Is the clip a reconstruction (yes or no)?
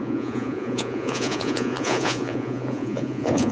yes